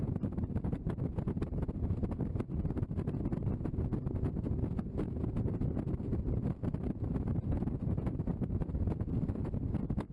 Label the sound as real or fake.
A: real